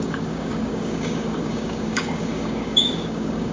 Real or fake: fake